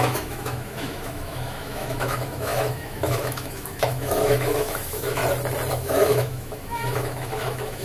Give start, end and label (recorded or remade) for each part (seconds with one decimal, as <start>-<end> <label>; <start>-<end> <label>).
0.0-5.2 remade; 5.2-5.7 recorded; 5.7-7.8 remade